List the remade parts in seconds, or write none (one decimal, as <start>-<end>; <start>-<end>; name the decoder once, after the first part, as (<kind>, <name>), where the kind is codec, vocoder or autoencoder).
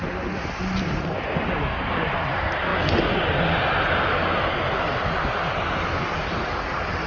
none